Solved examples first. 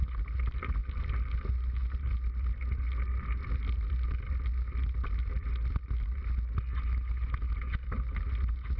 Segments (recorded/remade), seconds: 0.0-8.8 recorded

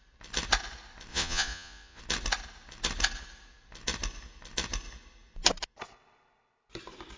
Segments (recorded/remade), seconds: 0.0-1.1 recorded; 1.1-2.0 remade; 2.0-7.2 recorded

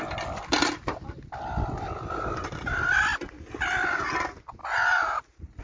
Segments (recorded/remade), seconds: 0.0-4.6 recorded; 4.6-5.6 remade

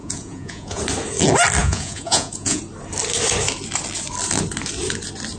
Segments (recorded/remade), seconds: 0.0-0.8 remade; 0.8-1.6 recorded; 1.6-2.6 remade; 2.6-5.4 recorded

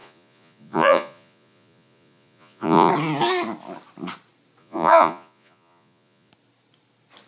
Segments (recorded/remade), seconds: 0.0-2.9 remade; 2.9-4.6 recorded; 4.6-6.3 remade; 6.3-7.3 recorded

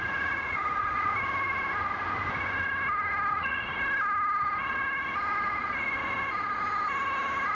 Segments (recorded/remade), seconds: 0.0-1.1 remade; 1.1-3.3 recorded; 3.3-3.7 remade; 3.7-7.5 recorded

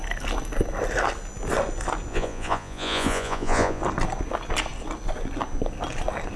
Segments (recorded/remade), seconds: 0.0-2.1 recorded; 2.1-3.8 remade; 3.8-6.4 recorded